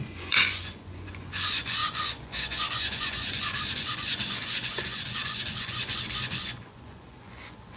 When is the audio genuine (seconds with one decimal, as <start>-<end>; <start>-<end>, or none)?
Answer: none